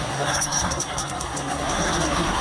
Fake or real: fake